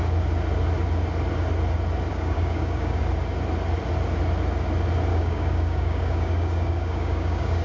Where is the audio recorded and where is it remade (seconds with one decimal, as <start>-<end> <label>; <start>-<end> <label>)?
0.0-2.1 recorded; 2.1-3.0 remade; 3.0-5.1 recorded; 5.1-7.6 remade